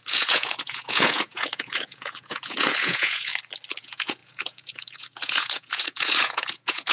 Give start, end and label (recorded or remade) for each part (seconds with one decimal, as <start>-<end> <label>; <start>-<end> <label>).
0.0-3.3 remade; 3.3-3.8 recorded; 3.8-6.9 remade